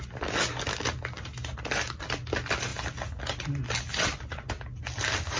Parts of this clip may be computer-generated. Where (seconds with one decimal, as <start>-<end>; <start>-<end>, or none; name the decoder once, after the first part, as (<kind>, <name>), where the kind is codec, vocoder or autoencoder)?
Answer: none